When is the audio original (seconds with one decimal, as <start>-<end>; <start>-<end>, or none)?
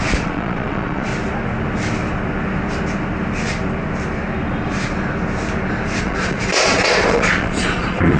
1.1-6.0